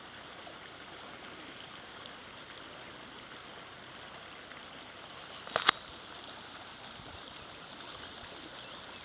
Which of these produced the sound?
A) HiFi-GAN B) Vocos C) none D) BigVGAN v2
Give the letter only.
C